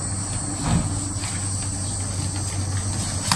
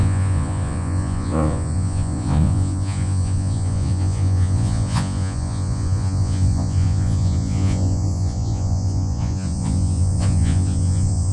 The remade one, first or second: second